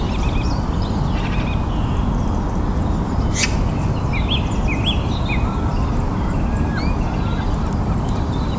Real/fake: real